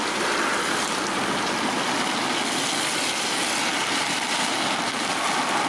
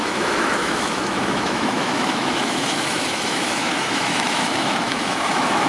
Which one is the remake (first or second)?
second